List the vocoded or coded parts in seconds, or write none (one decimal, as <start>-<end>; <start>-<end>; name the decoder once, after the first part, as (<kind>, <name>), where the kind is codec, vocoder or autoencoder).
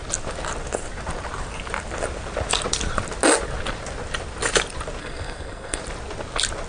5.0-5.8 (codec, SNAC)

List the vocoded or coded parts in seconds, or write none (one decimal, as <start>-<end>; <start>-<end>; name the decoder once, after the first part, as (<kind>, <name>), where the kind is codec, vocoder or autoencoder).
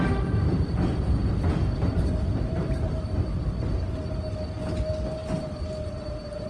none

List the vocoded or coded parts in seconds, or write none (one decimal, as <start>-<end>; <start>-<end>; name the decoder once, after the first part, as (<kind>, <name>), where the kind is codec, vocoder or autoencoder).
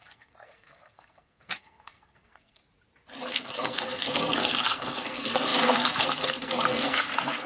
0.0-2.6 (codec, SNAC); 3.3-7.5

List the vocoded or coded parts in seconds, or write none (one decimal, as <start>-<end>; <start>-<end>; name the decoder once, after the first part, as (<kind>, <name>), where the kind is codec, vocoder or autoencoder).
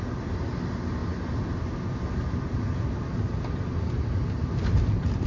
none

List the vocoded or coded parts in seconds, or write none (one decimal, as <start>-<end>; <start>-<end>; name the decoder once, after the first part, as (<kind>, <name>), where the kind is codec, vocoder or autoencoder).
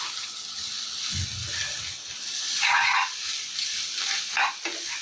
none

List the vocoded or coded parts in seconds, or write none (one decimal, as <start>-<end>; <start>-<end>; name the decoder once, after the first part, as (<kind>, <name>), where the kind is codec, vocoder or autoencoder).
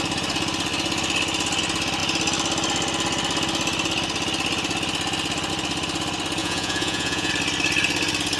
6.4-7.3 (vocoder, Vocos)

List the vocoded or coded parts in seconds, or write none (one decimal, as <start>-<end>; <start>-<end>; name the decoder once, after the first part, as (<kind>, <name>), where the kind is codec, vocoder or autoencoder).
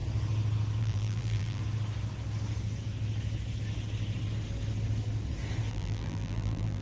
0.8-1.6 (vocoder, BigVGAN v2); 5.7-6.8